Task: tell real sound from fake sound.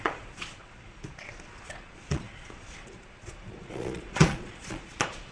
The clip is fake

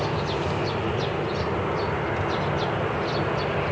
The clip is real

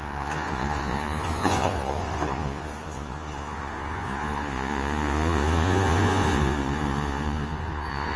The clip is fake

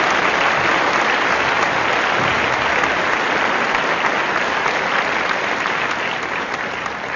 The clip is real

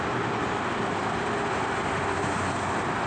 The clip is real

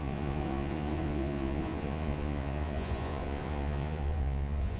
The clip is fake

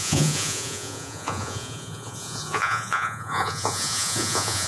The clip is fake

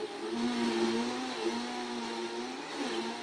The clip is real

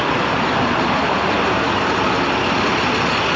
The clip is real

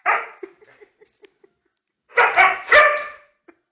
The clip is real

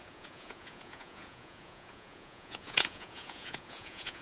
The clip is fake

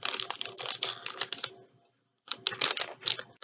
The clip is real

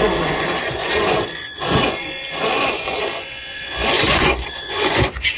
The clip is fake